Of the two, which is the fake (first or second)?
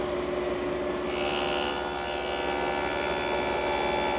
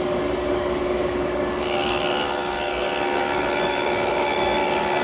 second